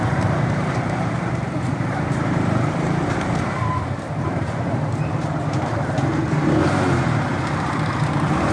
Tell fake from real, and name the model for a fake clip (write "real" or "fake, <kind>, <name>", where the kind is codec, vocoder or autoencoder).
fake, vocoder, BigVGAN v2